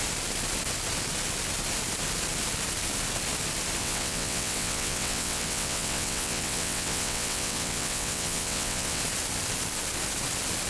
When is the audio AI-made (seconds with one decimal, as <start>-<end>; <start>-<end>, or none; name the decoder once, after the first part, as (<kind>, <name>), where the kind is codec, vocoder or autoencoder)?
3.8-9.0 (vocoder, WaveNeXt)